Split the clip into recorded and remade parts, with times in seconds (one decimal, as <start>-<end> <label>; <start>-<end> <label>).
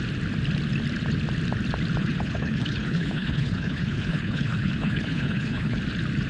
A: 0.0-2.0 recorded; 2.0-5.8 remade; 5.8-6.3 recorded